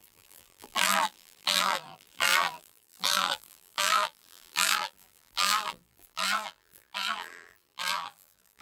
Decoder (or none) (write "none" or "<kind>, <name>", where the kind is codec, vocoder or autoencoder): vocoder, BigVGAN v2